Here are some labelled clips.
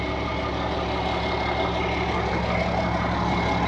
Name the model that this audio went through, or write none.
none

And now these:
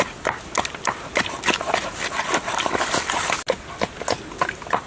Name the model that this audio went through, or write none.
none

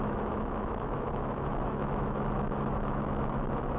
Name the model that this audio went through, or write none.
autoencoder, DAC-VAE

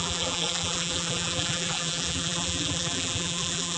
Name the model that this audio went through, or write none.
vocoder, BigVGAN v2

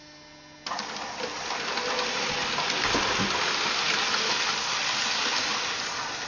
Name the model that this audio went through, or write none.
none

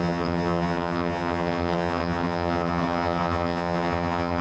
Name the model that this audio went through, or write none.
vocoder, HiFi-GAN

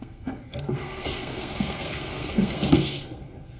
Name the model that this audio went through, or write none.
codec, SNAC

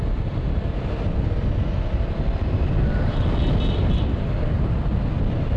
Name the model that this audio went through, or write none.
none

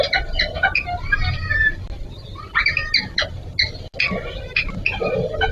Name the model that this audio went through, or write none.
none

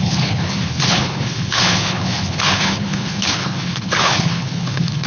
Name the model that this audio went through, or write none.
codec, HILCodec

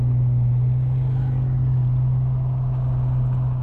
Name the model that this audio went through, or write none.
none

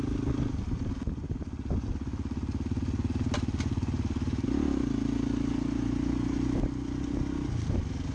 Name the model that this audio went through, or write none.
none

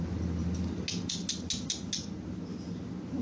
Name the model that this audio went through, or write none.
none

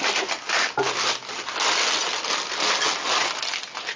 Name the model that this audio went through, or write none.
none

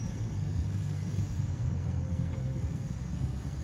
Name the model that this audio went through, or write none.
codec, SNAC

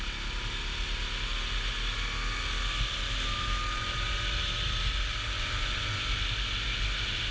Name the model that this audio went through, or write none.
none